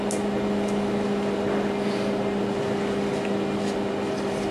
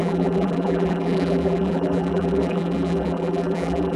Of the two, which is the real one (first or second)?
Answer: first